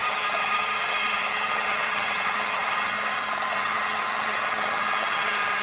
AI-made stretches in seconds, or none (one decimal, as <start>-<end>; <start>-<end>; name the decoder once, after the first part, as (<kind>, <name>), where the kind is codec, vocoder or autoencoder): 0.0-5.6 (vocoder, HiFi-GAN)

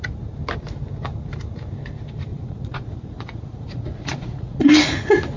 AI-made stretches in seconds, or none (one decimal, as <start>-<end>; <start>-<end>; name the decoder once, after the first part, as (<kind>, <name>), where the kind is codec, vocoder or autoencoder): 2.3-4.7 (vocoder, Vocos)

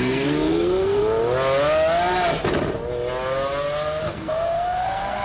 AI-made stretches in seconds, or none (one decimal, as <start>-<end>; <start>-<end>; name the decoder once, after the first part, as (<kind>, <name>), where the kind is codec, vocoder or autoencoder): 0.0-1.0 (codec, SNAC); 4.0-5.2